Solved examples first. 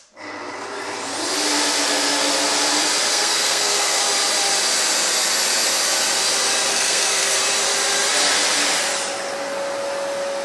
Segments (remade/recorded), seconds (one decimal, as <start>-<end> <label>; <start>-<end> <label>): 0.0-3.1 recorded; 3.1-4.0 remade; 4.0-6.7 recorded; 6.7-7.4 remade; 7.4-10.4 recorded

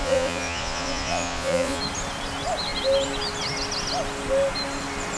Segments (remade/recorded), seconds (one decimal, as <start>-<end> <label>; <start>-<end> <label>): 0.0-1.8 remade; 1.8-5.2 recorded

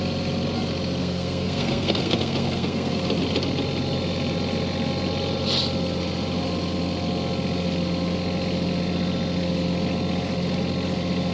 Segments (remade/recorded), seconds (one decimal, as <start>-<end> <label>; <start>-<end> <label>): 0.0-1.0 recorded; 1.0-3.0 remade; 3.0-11.3 recorded

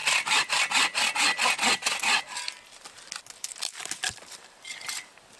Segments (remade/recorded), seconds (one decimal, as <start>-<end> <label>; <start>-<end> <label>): 0.0-3.2 recorded; 3.2-5.4 remade

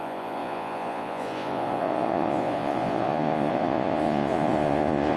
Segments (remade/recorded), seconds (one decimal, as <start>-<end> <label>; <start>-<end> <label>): 0.0-5.2 remade

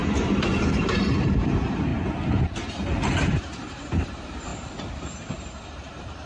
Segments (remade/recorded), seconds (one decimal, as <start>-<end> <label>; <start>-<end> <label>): 0.0-0.7 recorded; 0.7-1.9 remade; 1.9-3.4 recorded; 3.4-4.5 remade; 4.5-5.1 recorded; 5.1-6.3 remade